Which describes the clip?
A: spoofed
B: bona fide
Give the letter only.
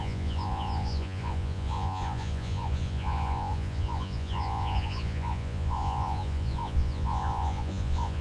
A